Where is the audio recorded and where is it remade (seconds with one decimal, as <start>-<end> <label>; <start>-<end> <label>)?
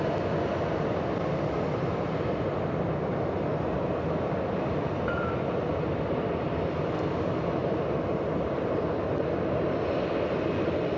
0.0-7.6 recorded; 7.6-8.2 remade; 8.2-11.0 recorded